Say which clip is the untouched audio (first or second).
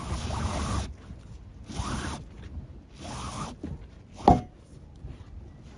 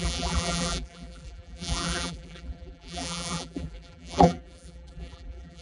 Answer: first